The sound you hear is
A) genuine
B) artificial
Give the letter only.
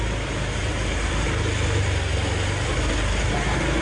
A